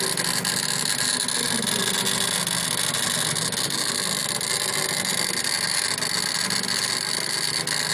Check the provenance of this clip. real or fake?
real